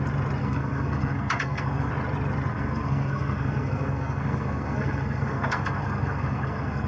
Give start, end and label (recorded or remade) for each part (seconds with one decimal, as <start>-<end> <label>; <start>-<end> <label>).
0.0-0.4 recorded; 0.4-1.9 remade; 1.9-2.5 recorded; 2.5-6.9 remade